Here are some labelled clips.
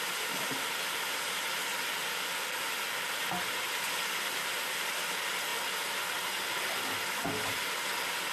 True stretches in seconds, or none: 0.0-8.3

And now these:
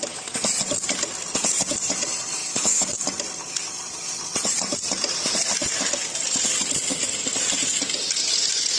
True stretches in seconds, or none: 0.0-2.4; 2.9-8.8

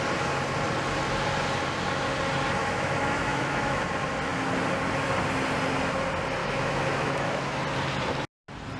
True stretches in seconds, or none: 0.0-2.6; 3.8-6.4; 7.6-8.8

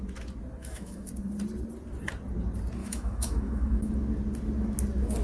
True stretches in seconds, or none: 0.0-0.6; 1.1-2.8; 3.9-5.2

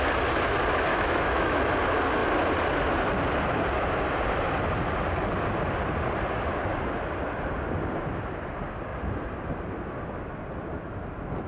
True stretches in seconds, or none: 0.0-0.9; 1.6-11.5

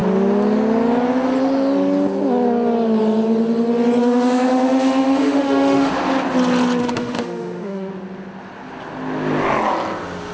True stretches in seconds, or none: 0.0-4.0; 5.9-6.8; 7.9-10.3

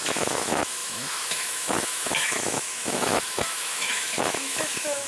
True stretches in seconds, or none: none

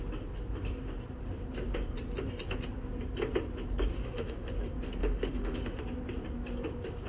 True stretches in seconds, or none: 0.0-3.9; 4.5-5.0; 5.8-7.1